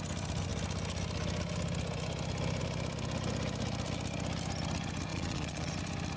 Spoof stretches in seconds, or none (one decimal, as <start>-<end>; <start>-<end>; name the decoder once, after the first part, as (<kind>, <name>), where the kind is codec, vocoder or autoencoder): 5.1-5.7 (vocoder, Vocos)